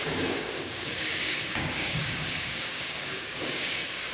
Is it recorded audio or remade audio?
remade